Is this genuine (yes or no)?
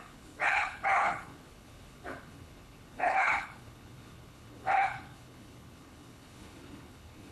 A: no